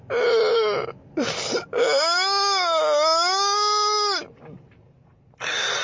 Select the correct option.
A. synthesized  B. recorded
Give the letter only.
B